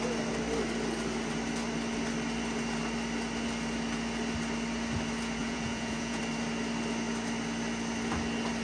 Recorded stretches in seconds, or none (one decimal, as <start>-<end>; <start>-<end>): 0.0-5.4; 6.2-8.6